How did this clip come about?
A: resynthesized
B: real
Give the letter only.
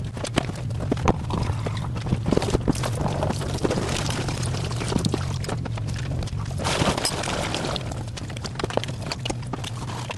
A